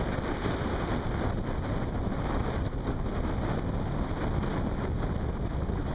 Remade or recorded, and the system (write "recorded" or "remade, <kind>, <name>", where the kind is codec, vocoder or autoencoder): recorded